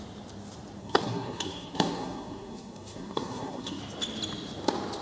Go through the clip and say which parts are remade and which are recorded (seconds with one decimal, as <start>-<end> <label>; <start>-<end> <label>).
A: 0.0-0.8 recorded; 0.8-3.8 remade; 3.8-5.0 recorded